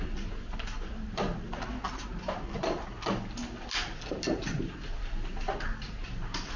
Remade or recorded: recorded